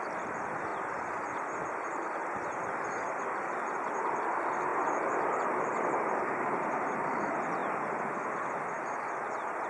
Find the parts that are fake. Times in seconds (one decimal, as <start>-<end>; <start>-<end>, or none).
0.0-0.7; 1.9-7.6; 8.4-9.7